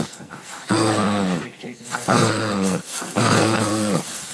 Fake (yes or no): yes